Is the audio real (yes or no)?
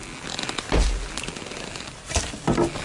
yes